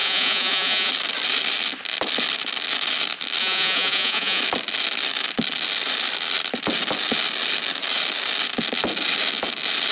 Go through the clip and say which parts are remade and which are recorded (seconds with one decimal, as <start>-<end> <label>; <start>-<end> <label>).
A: 0.0-0.9 remade; 0.9-3.4 recorded; 3.4-4.4 remade; 4.4-9.9 recorded